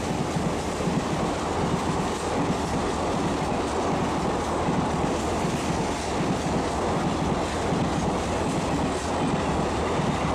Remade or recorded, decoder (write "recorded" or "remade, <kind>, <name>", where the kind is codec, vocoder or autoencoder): recorded